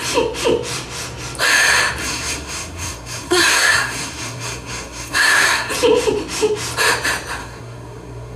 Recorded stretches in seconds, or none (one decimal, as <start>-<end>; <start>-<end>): 0.0-2.0; 5.7-7.4